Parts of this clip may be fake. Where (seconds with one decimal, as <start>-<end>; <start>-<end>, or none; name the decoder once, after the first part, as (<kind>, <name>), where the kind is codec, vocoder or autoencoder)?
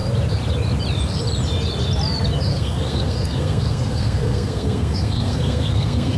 2.5-6.2 (codec, SNAC)